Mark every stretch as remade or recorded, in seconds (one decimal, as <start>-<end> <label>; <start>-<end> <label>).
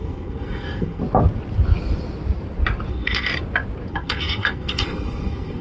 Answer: 0.0-1.0 remade; 1.0-2.9 recorded; 2.9-3.3 remade; 3.3-3.9 recorded; 3.9-5.6 remade